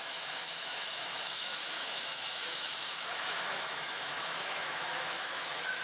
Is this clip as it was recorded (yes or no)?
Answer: no